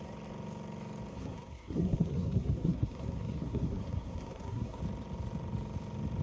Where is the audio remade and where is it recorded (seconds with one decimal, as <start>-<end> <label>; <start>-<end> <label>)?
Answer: 0.0-1.1 recorded; 1.1-4.8 remade; 4.8-6.2 recorded